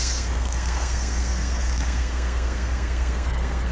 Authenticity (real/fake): fake